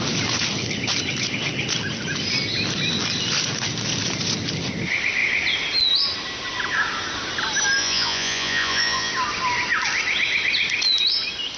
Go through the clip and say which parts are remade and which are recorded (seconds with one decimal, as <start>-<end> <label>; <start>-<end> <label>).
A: 0.0-7.8 recorded; 7.8-9.1 remade; 9.1-11.6 recorded